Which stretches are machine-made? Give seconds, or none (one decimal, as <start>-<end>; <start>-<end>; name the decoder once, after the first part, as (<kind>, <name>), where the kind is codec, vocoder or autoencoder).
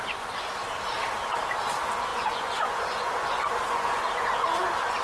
0.0-0.5 (vocoder, Vocos); 2.1-4.0